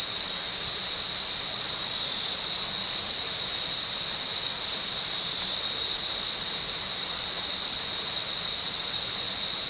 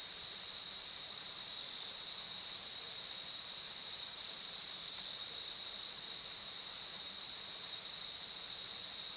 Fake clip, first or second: second